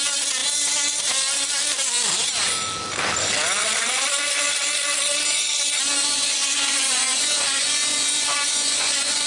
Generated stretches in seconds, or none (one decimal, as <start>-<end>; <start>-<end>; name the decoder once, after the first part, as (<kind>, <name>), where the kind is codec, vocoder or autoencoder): 6.0-9.3 (vocoder, Vocos)